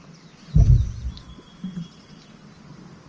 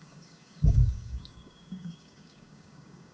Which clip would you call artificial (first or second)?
second